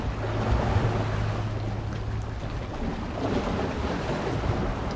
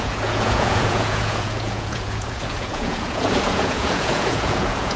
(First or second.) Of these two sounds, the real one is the first